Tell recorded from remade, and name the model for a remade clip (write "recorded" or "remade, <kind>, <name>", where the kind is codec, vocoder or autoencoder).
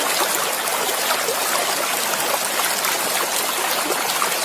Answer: recorded